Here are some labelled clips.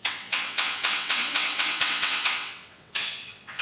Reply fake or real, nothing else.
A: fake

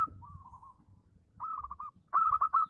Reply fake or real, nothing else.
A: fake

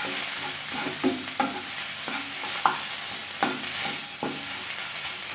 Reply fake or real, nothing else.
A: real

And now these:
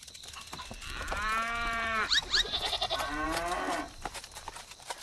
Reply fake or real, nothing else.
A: fake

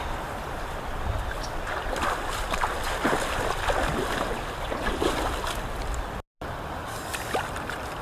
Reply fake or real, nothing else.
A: real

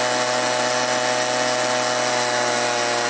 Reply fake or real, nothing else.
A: real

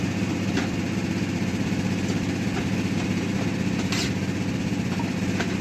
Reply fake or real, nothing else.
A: real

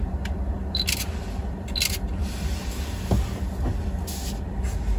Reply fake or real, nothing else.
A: real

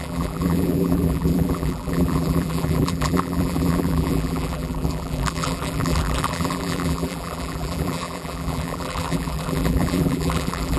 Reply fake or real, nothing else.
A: fake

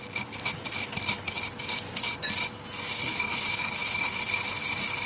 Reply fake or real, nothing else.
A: real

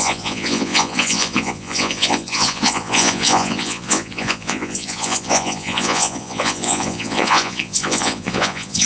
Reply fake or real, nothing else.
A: fake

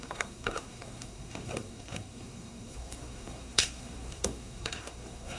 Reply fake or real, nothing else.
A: fake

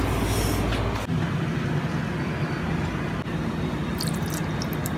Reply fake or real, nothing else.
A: real